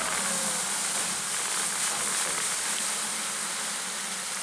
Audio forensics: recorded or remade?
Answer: recorded